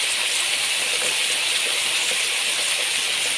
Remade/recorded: recorded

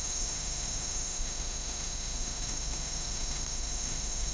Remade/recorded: remade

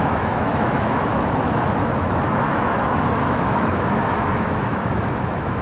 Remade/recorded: remade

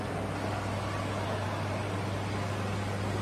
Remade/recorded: recorded